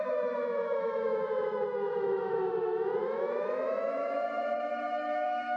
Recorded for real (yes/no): no